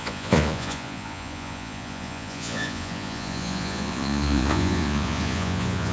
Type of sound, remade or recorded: remade